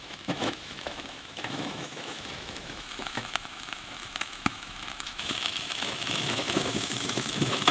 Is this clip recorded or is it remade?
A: remade